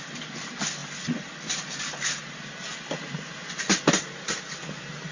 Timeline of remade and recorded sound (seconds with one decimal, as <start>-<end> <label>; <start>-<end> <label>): 0.0-5.1 recorded